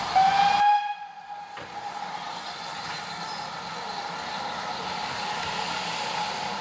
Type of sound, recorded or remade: recorded